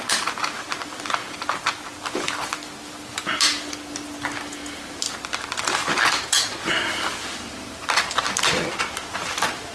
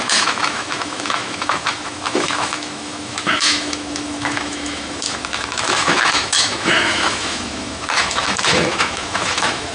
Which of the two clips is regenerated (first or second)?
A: second